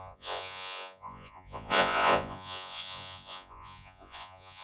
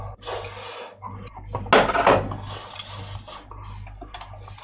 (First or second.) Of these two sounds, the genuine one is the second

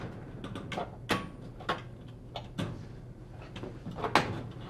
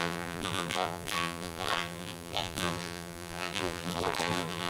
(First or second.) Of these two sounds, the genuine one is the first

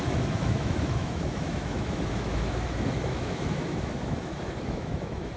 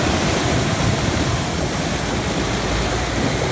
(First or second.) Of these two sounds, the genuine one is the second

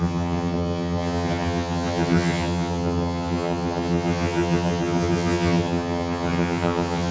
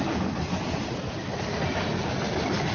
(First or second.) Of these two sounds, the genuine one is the second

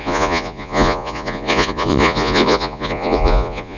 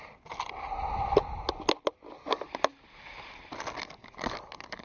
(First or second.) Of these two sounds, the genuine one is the second